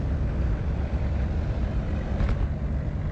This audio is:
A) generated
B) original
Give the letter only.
B